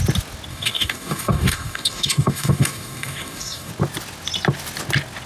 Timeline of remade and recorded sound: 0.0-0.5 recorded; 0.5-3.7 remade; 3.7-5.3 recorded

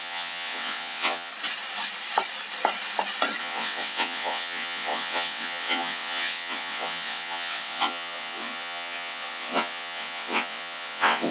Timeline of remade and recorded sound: 0.0-1.3 remade; 1.3-3.4 recorded; 3.4-11.3 remade

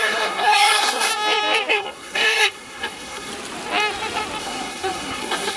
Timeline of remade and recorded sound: 0.0-1.1 remade; 1.1-1.7 recorded; 1.7-3.3 remade; 3.3-4.4 recorded; 4.4-5.6 remade

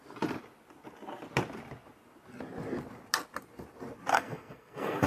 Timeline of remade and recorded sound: 0.0-4.1 recorded; 4.1-5.1 remade

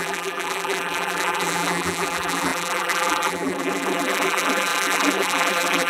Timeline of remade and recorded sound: 0.0-5.9 remade

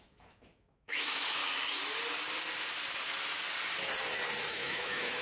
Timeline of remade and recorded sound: 0.0-1.4 remade; 1.4-4.5 recorded; 4.5-5.2 remade